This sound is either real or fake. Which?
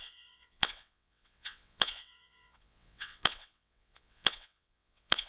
fake